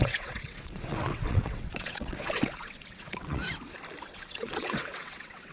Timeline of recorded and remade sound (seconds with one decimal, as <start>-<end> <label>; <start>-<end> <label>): 0.0-3.4 remade; 3.4-4.0 recorded; 4.0-5.5 remade